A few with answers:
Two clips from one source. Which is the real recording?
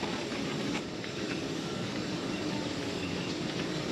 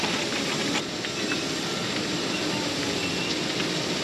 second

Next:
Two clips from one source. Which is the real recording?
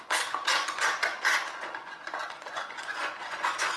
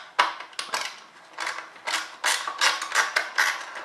second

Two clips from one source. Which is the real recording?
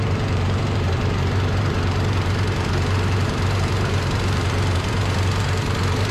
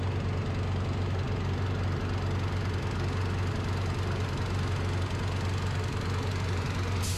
second